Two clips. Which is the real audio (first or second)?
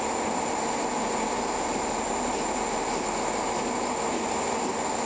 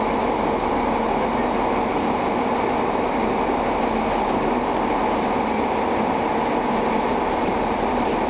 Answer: first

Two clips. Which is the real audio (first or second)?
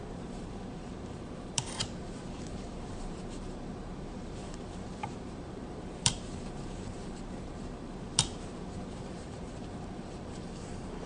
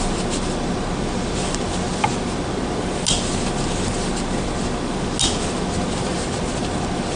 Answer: second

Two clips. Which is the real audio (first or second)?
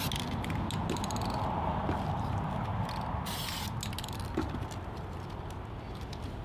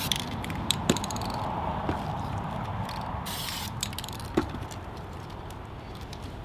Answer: first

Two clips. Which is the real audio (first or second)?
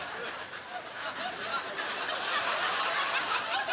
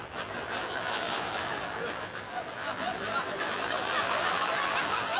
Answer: first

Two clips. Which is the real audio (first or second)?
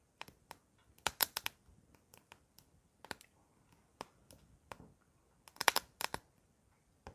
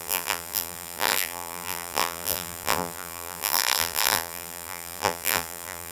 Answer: first